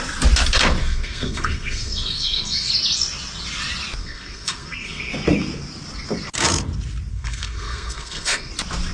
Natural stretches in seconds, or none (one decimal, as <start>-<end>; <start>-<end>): 0.0-0.8; 2.7-4.0; 5.1-7.1; 8.5-8.9